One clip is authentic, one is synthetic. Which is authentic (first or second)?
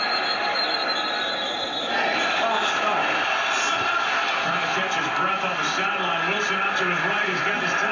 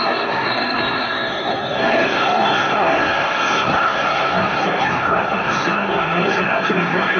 first